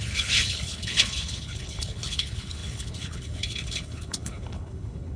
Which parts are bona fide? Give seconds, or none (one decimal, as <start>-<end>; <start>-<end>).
none